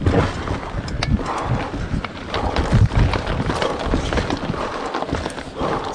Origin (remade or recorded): recorded